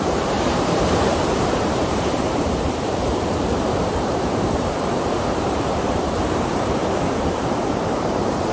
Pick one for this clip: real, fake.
fake